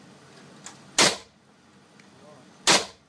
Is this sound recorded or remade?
recorded